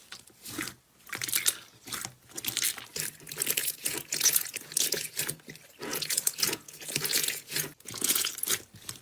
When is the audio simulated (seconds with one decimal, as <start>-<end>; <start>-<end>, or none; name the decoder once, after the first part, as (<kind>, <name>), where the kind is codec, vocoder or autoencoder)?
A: 3.6-5.2 (vocoder, Vocos); 5.9-8.3